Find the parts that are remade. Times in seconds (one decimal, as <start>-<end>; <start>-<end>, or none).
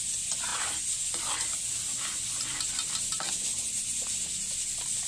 none